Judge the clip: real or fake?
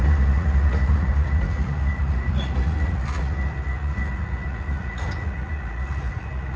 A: fake